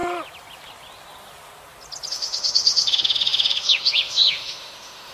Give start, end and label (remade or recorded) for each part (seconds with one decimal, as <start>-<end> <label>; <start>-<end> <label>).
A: 0.0-2.1 recorded; 2.1-5.1 remade